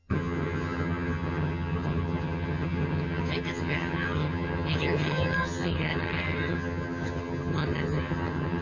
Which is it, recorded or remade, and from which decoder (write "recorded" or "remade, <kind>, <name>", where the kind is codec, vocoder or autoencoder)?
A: remade, vocoder, HiFi-GAN